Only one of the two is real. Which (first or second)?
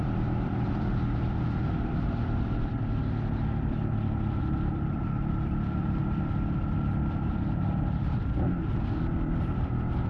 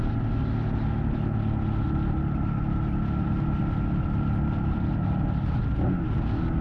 second